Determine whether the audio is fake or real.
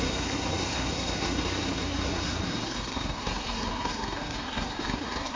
fake